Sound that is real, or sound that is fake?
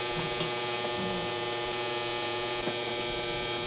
fake